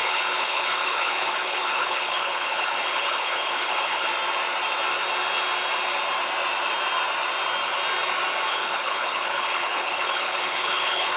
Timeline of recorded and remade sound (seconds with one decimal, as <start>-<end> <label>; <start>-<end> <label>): 0.0-4.1 remade; 4.1-8.5 recorded; 8.5-11.2 remade